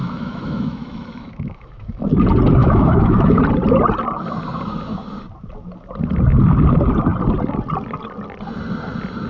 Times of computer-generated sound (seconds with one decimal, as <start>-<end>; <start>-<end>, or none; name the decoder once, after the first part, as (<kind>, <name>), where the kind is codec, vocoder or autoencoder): 0.0-2.0 (autoencoder, DAC-VAE); 2.6-3.4